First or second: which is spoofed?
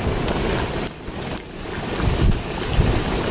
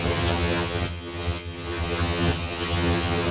second